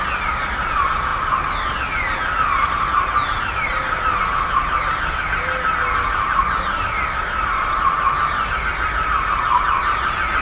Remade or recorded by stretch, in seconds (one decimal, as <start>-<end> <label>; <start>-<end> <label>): 0.0-10.4 recorded